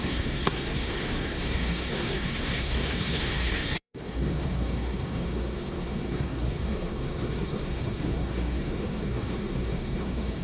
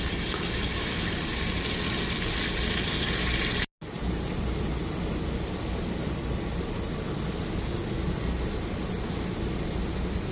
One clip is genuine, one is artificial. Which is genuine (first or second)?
second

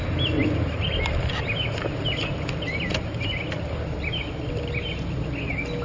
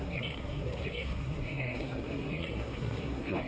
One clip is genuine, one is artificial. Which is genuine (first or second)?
first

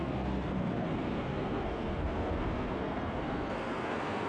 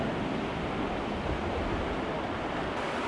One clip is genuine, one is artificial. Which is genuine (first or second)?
second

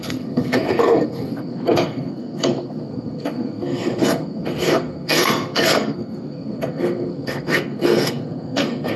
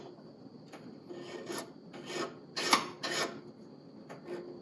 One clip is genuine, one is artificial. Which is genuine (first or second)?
second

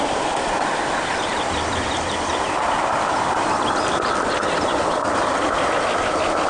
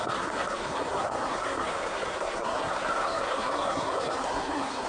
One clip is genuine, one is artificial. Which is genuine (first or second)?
first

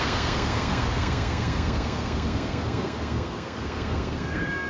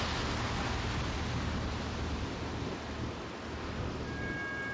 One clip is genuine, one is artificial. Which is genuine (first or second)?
second